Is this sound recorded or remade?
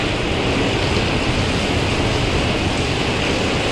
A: recorded